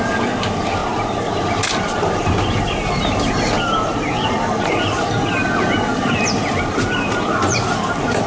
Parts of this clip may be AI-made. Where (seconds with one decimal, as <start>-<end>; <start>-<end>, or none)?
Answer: none